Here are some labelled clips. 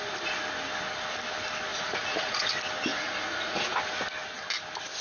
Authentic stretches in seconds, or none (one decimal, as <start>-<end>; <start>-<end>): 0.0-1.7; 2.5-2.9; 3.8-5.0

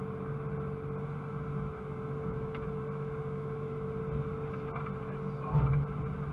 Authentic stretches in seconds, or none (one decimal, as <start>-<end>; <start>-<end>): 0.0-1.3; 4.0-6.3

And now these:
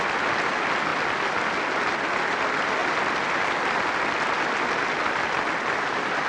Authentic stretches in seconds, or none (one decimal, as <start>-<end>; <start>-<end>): 0.0-6.3

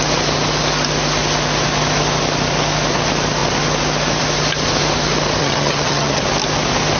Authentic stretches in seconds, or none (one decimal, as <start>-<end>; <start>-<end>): 0.0-5.4; 6.2-7.0

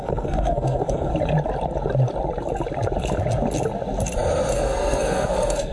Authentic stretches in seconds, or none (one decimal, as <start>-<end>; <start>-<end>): 1.1-4.5